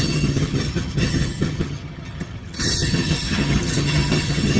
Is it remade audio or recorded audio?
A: remade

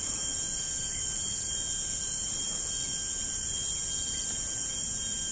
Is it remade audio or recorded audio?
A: recorded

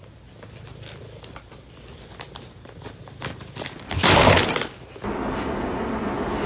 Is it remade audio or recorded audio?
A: recorded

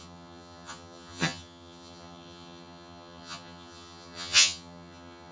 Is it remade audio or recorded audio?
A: remade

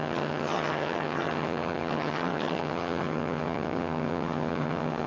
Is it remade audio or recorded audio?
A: remade